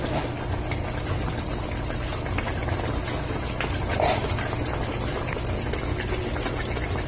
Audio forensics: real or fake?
real